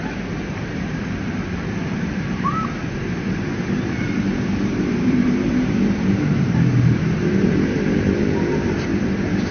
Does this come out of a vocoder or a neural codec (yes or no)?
yes